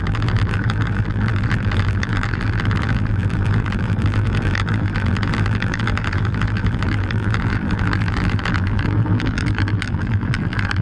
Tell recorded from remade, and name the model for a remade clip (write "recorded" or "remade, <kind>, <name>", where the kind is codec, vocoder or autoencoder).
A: remade, vocoder, BigVGAN v2